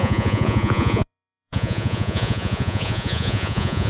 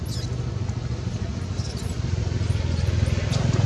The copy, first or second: first